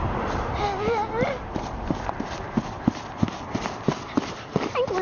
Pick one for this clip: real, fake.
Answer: real